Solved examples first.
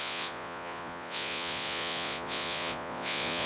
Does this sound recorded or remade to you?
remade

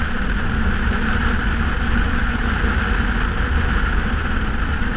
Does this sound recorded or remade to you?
recorded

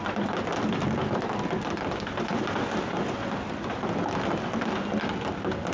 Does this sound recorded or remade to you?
recorded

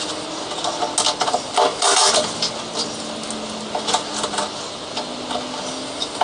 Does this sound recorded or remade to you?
recorded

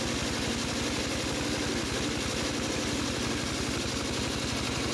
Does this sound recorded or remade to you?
recorded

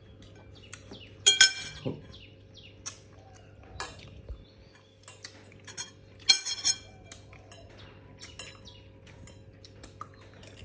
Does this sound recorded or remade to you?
recorded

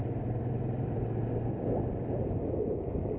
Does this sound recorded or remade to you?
recorded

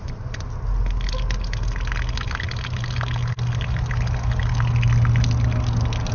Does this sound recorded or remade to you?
recorded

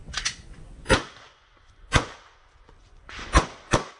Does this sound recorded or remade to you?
remade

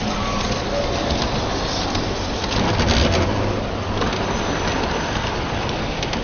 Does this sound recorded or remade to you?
recorded